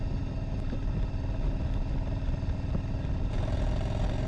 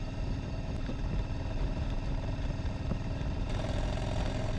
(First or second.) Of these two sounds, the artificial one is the second